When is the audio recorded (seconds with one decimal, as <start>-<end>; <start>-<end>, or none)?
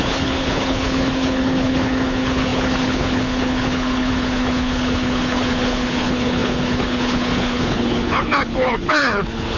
none